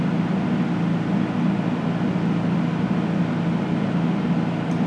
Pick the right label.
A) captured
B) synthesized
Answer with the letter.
A